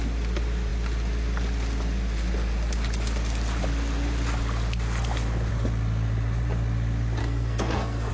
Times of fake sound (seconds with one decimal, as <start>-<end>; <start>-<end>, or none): 7.2-8.1

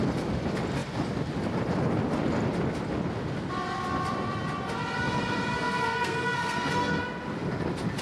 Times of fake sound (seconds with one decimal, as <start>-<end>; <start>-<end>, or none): 5.5-7.0

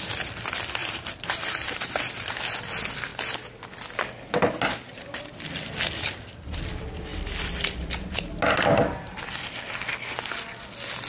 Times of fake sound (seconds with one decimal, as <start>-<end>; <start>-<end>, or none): 0.8-2.1

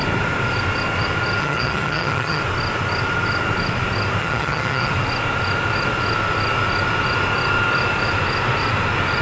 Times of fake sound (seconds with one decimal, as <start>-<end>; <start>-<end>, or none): 1.4-2.4; 4.2-4.9

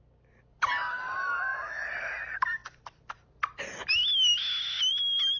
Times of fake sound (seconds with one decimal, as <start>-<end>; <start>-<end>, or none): 1.5-2.2

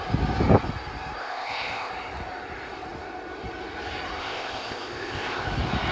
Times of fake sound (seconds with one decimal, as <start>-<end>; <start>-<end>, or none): 1.2-1.9; 4.2-5.4